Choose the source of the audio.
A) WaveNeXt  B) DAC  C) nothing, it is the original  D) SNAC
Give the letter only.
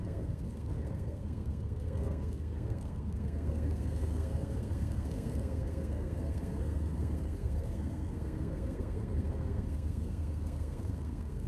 D